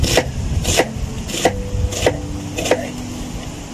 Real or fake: real